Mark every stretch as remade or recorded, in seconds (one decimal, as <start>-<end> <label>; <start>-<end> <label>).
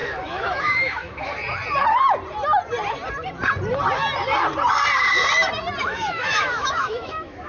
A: 0.0-1.3 remade; 1.3-5.8 recorded; 5.8-7.5 remade